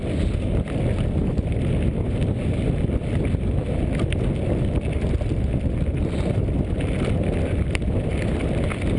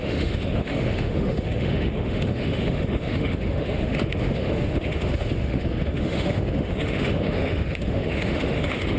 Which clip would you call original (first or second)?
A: first